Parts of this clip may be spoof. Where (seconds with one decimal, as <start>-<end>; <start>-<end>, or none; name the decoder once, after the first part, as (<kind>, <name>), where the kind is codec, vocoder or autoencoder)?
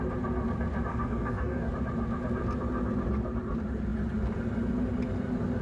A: 0.9-1.7 (codec, DAC)